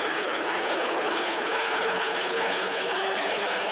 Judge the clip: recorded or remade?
remade